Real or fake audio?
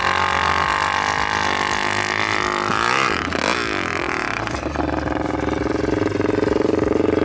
real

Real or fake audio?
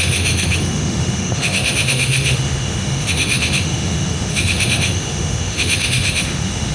fake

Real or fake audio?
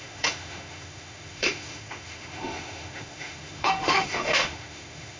fake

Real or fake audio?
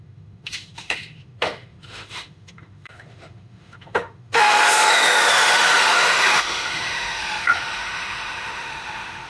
fake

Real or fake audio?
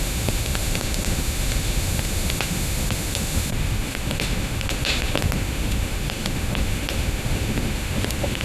fake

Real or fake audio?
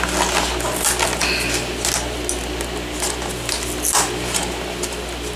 real